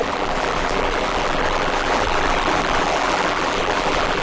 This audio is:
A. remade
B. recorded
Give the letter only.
A